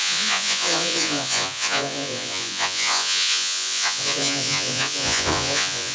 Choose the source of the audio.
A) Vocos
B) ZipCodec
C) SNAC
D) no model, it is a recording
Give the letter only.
A